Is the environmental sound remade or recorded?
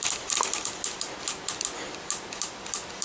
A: recorded